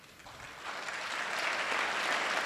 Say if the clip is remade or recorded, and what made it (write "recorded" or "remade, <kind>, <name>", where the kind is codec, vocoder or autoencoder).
recorded